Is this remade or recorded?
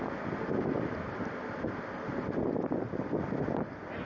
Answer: recorded